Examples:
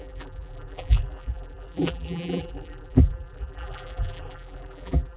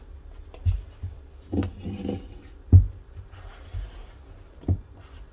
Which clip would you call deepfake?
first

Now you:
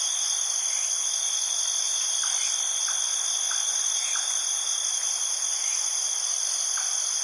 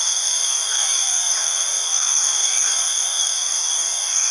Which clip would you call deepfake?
second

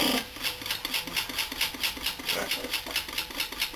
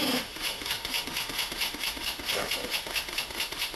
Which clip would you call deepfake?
second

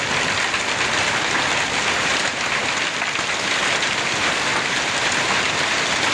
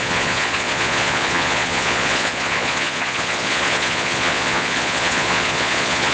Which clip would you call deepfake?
second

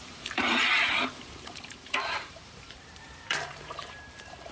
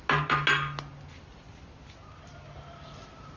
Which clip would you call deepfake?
first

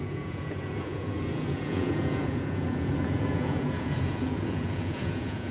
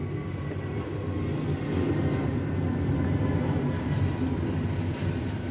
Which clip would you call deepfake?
first